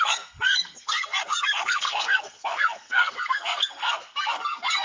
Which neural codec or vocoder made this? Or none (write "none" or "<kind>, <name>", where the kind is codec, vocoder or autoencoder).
codec, SNAC